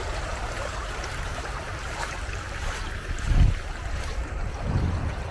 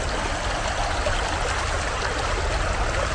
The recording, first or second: second